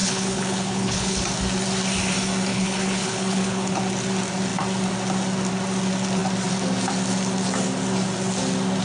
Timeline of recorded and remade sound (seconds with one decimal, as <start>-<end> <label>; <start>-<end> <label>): 0.0-1.2 remade; 1.2-2.5 recorded; 2.5-3.8 remade; 3.8-8.8 recorded

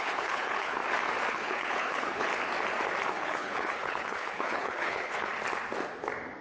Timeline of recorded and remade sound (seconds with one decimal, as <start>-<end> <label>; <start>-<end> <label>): 0.0-0.8 remade; 0.8-1.3 recorded; 1.3-2.3 remade; 2.3-3.1 recorded; 3.1-5.3 remade; 5.3-6.4 recorded

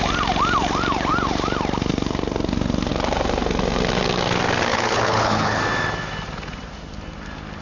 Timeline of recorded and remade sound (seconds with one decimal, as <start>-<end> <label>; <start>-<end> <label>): 0.0-4.7 recorded; 4.7-5.6 remade; 5.6-7.6 recorded

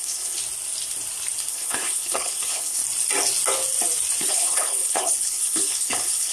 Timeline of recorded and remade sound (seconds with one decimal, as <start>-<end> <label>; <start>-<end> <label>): 0.0-0.4 remade; 0.4-1.5 recorded; 1.5-2.8 remade; 2.8-4.3 recorded; 4.3-6.3 remade

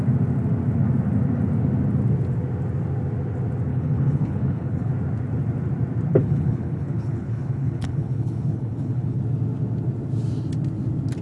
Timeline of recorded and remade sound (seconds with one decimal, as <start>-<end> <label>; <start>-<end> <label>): 0.0-3.7 recorded; 3.7-4.9 remade; 4.9-6.1 recorded; 6.1-9.2 remade; 9.2-11.2 recorded

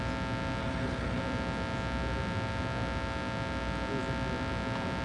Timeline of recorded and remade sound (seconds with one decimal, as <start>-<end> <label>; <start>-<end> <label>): 0.0-0.6 recorded; 0.6-1.2 remade; 1.2-5.0 recorded

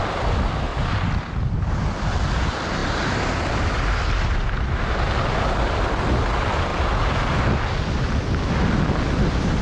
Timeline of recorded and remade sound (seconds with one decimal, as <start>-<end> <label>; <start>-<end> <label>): 0.0-9.6 recorded